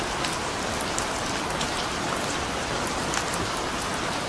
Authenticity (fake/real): real